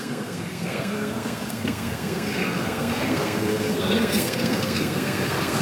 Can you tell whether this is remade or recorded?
remade